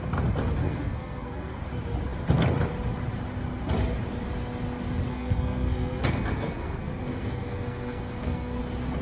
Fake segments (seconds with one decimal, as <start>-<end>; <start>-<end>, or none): 0.6-1.6; 5.1-8.6